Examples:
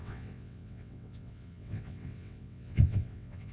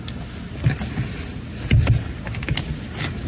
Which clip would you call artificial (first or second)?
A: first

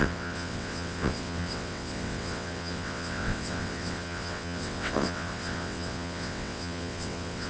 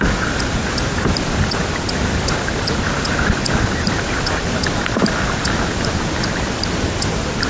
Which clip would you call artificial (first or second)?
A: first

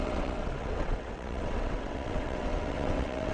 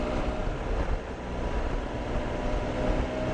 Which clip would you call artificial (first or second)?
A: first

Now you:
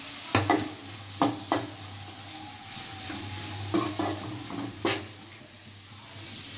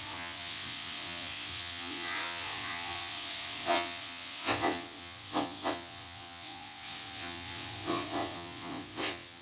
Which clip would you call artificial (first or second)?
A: second